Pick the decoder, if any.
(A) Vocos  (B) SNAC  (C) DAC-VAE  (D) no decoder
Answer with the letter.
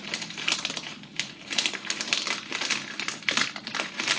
D